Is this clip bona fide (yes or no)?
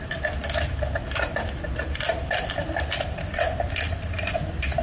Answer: no